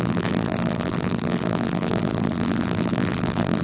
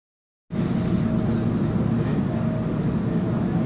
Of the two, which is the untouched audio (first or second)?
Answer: second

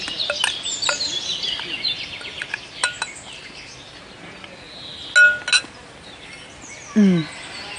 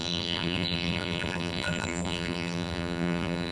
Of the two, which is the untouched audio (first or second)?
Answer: first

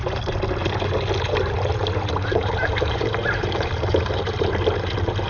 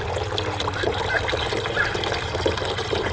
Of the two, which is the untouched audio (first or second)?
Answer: second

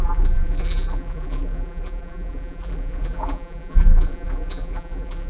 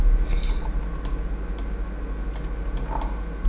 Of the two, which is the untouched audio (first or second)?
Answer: second